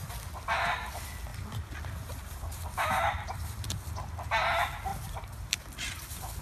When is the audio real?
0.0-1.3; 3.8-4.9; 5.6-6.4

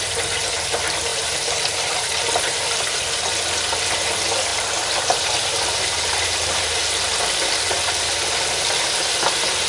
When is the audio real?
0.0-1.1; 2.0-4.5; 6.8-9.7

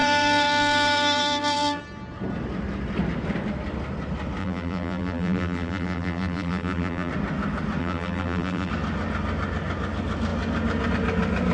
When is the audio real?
1.8-4.4; 7.1-7.8; 8.7-11.5

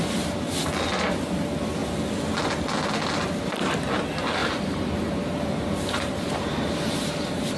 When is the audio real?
0.0-4.4; 6.9-7.6

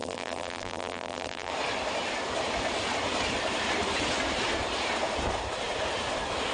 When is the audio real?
1.5-6.5